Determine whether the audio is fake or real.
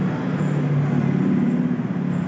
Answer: real